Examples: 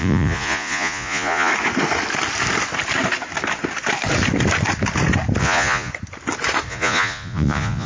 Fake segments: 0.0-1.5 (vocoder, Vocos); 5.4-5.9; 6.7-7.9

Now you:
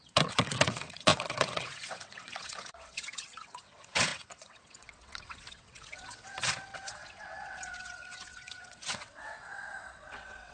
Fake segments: 0.0-10.5 (vocoder, WaveNeXt)

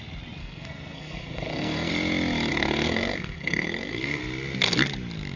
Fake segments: 0.4-1.9 (codec, SNAC); 2.5-4.2

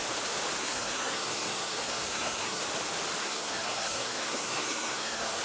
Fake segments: 0.6-2.6 (codec, SNAC); 3.2-5.4

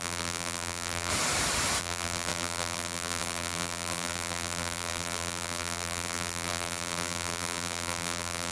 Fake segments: 0.0-1.1 (vocoder, BigVGAN v2); 1.8-8.5

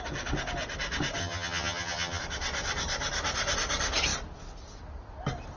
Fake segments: 1.2-2.2 (vocoder, HiFi-GAN)

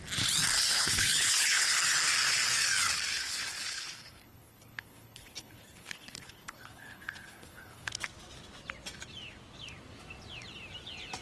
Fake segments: 0.7-1.8 (codec, HILCodec); 3.1-7.9